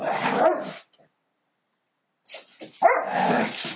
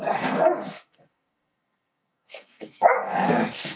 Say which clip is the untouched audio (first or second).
first